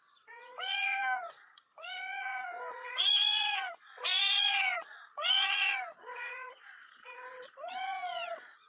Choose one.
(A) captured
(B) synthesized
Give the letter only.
B